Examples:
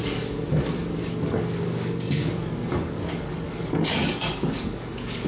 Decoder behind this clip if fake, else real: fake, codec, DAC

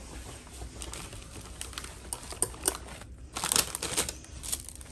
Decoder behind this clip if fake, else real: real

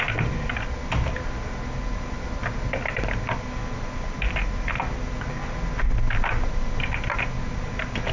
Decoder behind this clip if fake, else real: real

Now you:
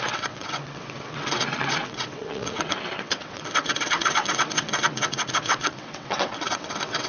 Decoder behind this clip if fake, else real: fake, vocoder, WaveNeXt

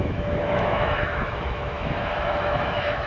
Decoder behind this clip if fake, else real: fake, autoencoder, DAC-VAE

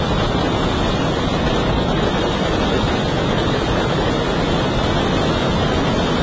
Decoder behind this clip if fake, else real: real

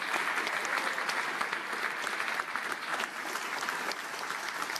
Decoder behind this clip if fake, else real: real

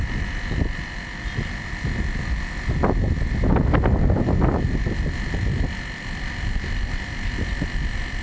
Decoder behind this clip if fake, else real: real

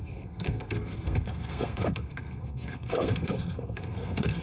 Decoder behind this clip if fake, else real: fake, codec, SNAC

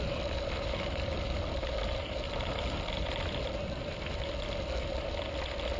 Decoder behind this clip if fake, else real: real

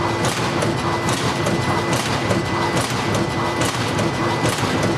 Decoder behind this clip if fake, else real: real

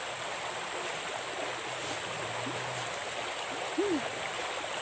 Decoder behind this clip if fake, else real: real